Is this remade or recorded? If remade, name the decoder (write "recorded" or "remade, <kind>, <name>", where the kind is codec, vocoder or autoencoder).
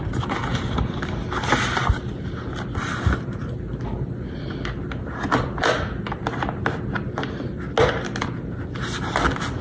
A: recorded